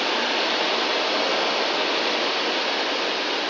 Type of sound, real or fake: real